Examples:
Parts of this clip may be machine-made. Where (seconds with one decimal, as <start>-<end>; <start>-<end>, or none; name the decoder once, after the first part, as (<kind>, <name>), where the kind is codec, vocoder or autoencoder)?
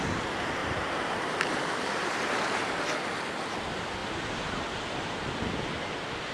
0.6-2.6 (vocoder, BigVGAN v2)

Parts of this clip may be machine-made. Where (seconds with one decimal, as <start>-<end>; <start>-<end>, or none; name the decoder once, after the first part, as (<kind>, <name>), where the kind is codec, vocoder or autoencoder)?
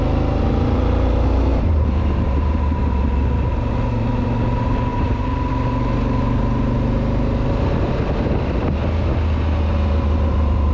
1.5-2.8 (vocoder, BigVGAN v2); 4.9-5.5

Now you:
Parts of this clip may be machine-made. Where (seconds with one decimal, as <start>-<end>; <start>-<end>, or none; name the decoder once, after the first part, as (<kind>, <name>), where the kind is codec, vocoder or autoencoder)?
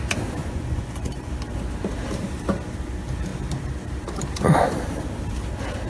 0.4-1.3 (vocoder, Vocos)